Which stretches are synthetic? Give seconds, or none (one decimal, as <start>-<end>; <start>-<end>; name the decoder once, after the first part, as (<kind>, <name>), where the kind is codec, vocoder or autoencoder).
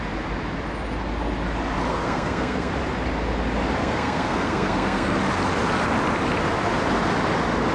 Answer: 1.9-2.7 (codec, SNAC); 3.8-5.2